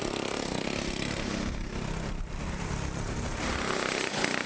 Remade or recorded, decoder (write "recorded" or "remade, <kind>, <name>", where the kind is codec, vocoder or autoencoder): remade, vocoder, BigVGAN v2